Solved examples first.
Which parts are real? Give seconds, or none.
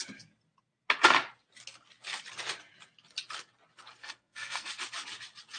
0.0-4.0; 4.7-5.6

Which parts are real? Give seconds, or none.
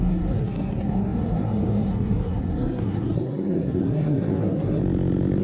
4.8-5.4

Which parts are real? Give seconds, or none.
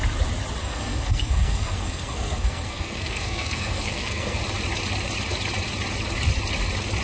0.0-0.6; 4.4-7.0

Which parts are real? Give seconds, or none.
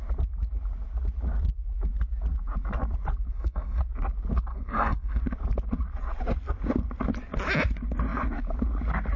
0.0-3.3; 3.8-4.5; 5.2-9.2